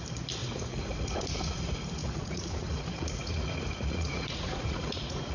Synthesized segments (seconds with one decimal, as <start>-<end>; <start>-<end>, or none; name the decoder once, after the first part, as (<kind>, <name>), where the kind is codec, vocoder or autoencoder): 0.4-1.6 (vocoder, Vocos); 2.0-5.3